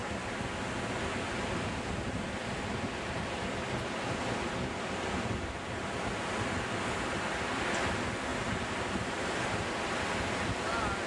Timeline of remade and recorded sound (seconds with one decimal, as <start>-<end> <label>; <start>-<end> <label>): 0.0-11.1 recorded